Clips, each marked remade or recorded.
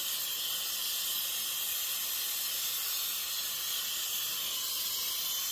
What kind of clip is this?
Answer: recorded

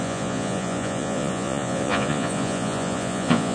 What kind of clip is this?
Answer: remade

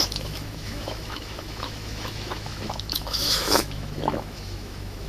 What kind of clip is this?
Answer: remade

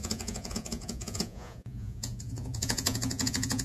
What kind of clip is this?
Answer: remade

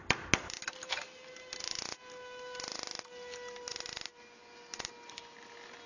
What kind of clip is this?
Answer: recorded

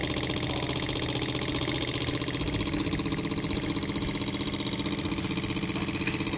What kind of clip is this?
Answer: recorded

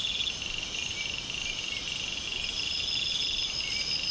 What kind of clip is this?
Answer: recorded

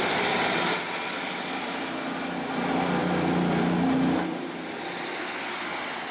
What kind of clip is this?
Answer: recorded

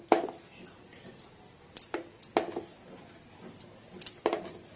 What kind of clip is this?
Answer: recorded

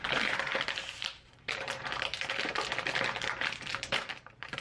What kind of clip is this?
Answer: remade